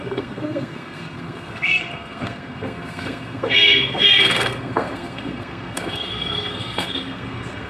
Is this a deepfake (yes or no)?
yes